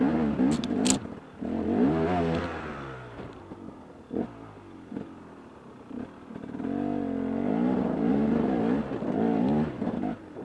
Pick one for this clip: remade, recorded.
recorded